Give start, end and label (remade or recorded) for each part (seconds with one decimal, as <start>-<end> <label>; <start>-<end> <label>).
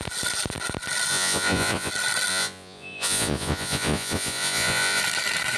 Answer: 0.0-1.1 recorded; 1.1-1.9 remade; 1.9-2.3 recorded; 2.3-5.0 remade; 5.0-5.6 recorded